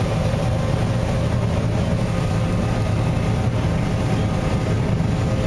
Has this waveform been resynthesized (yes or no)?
no